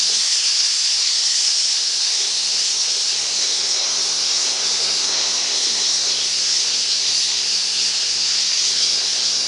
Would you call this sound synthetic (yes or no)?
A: yes